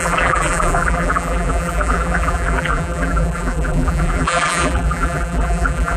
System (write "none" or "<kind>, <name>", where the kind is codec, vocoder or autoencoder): vocoder, BigVGAN v2